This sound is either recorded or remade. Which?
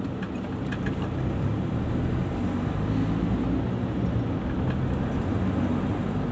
recorded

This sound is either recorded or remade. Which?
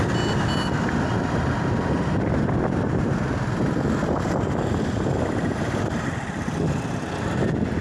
recorded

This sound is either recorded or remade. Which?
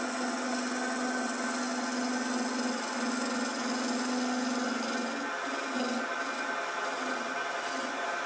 recorded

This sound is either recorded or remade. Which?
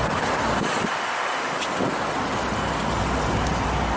recorded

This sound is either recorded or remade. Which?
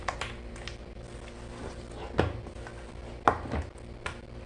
recorded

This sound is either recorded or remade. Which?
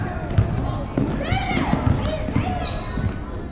recorded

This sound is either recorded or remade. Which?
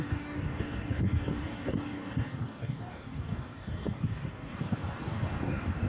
remade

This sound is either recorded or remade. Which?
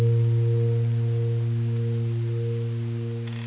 recorded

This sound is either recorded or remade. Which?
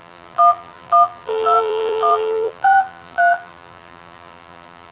remade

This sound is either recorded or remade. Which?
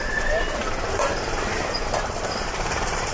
remade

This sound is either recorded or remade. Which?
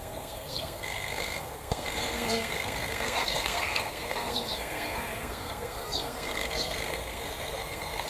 remade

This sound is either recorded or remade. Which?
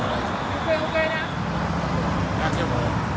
recorded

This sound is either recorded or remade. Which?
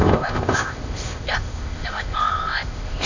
remade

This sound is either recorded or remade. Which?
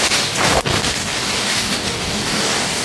remade